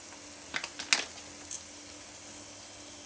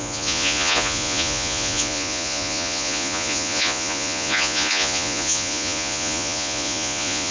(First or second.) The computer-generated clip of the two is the second